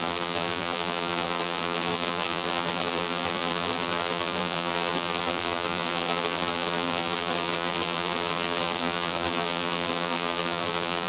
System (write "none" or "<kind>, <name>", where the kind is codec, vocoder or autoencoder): vocoder, BigVGAN v2